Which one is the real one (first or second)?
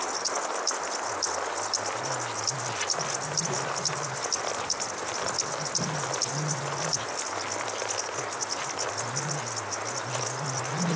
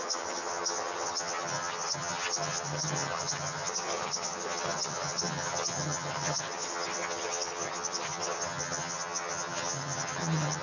first